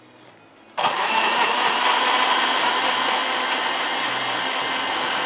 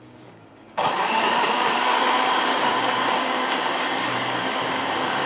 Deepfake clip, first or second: second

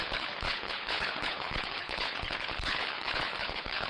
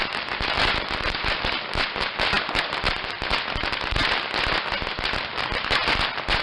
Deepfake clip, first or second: first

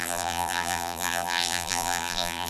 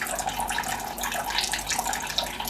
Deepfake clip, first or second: first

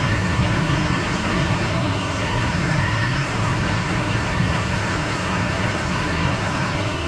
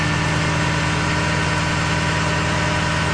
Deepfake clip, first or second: first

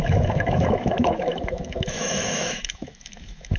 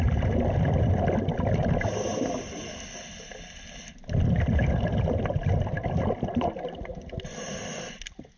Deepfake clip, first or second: first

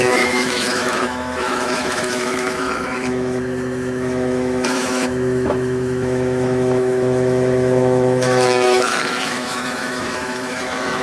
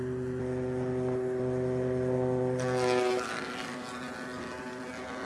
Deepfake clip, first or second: first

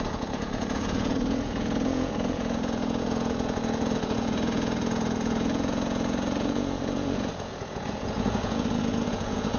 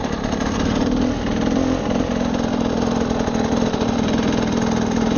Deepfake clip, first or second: first